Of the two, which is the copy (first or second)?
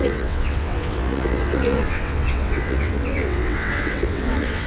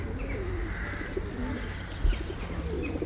first